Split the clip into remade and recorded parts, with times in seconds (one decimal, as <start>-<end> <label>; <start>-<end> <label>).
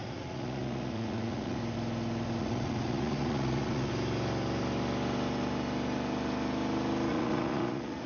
0.0-1.6 remade; 1.6-2.4 recorded; 2.4-3.9 remade; 3.9-7.1 recorded; 7.1-8.1 remade